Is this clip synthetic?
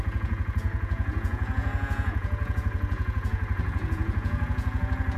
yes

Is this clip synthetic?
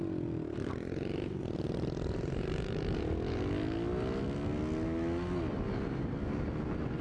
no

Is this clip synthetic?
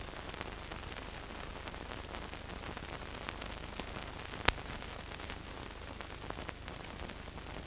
no